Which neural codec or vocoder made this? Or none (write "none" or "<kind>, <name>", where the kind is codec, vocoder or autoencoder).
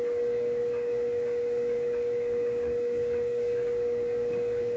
codec, DAC